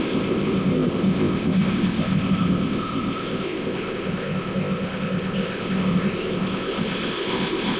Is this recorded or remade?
remade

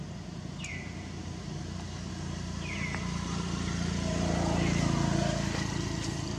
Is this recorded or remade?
recorded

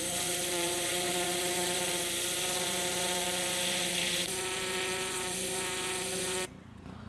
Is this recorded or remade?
remade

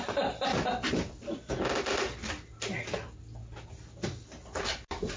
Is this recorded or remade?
recorded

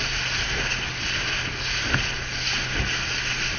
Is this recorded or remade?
recorded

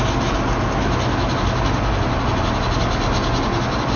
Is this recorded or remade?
recorded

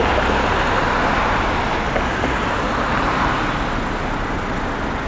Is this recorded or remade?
recorded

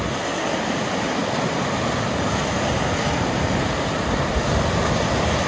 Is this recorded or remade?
recorded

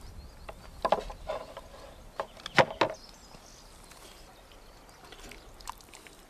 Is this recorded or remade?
recorded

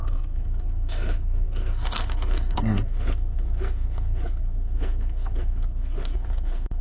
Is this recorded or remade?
remade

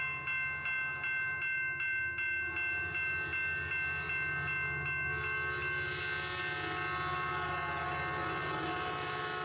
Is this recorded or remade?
recorded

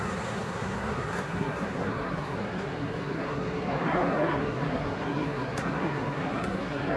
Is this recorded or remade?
remade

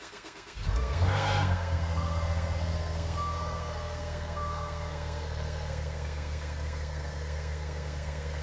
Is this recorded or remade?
remade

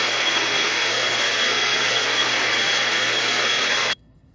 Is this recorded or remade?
remade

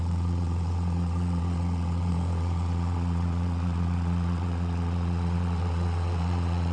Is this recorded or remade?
remade